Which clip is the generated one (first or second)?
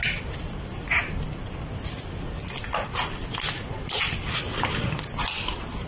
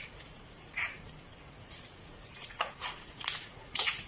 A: second